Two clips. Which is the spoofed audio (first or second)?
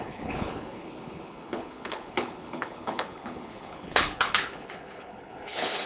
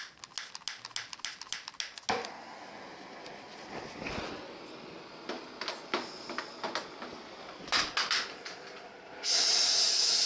first